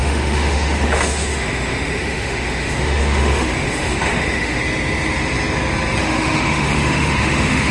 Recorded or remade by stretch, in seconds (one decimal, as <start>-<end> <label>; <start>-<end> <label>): 0.0-4.6 remade; 4.6-6.0 recorded; 6.0-7.7 remade